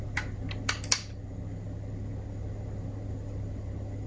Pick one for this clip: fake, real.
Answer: real